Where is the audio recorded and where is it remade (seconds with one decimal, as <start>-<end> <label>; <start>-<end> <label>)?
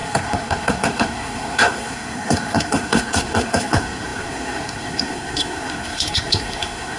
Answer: 0.0-7.0 remade